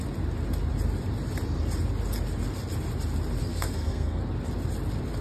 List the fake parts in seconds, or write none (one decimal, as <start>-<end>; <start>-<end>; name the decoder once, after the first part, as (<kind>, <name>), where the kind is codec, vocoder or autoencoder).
3.4-4.2 (codec, SNAC)